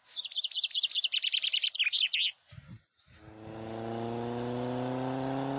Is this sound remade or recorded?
recorded